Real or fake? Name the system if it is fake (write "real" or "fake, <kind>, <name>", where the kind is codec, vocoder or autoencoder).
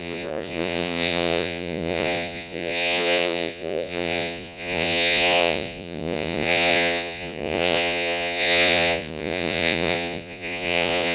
fake, vocoder, Vocos